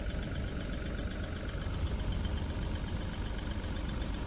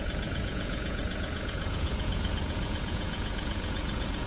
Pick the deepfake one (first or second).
second